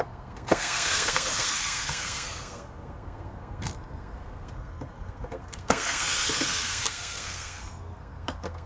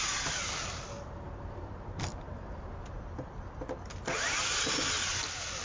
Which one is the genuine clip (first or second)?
second